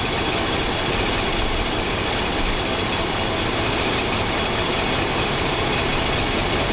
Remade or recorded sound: recorded